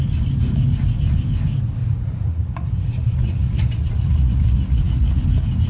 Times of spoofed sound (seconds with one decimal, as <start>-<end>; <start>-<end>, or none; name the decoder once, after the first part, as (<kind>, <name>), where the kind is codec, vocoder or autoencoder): 1.8-5.2 (vocoder, Vocos)